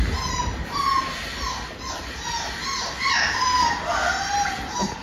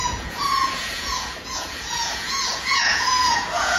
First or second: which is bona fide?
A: first